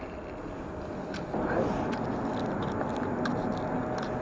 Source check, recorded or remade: recorded